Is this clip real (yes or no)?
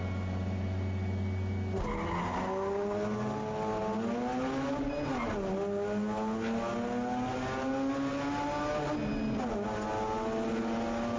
yes